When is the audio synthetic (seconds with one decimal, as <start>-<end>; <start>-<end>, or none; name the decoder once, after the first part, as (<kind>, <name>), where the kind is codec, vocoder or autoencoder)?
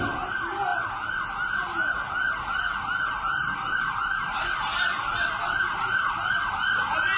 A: none